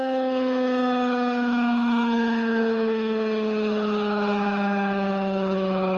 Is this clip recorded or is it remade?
remade